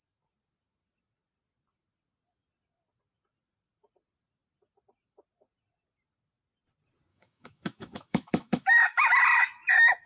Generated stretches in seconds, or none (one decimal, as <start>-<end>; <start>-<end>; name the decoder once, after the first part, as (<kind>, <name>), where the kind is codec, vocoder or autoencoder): 7.1-9.1 (autoencoder, DAC-VAE)